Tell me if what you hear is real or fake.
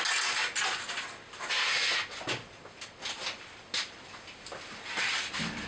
real